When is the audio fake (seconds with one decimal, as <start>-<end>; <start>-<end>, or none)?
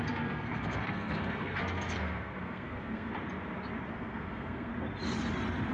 0.0-3.1; 3.9-4.7